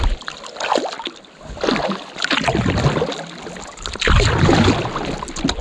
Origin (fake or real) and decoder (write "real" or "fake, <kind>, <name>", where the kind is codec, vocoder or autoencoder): real